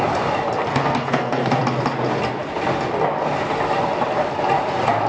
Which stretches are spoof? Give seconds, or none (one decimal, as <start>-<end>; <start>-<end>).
0.7-1.6